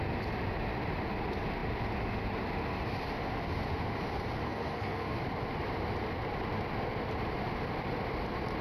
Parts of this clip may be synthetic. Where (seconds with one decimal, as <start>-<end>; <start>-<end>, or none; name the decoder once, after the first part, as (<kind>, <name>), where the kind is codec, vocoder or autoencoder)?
4.4-5.2 (codec, SNAC)